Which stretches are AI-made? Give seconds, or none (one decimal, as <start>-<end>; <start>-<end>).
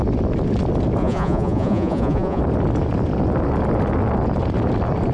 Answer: 1.0-2.4